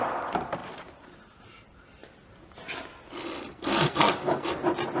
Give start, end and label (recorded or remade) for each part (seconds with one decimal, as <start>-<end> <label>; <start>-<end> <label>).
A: 0.0-3.5 recorded; 3.5-4.5 remade; 4.5-5.0 recorded

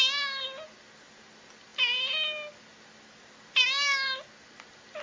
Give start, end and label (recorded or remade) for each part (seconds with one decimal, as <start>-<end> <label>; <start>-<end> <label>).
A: 0.0-5.0 recorded

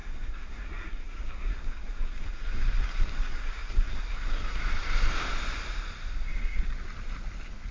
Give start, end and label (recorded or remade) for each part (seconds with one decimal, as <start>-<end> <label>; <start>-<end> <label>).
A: 0.0-4.6 remade; 4.6-7.7 recorded